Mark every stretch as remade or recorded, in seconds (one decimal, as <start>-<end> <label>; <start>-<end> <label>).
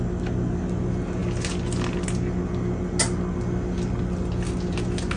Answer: 0.0-5.2 recorded